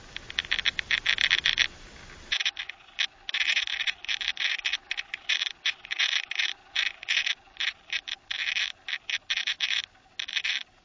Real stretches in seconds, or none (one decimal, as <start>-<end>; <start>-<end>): 0.0-10.8